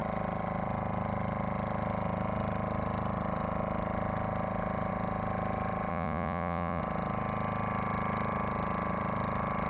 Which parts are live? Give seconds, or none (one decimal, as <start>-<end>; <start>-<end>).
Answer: 0.0-5.9; 6.8-9.7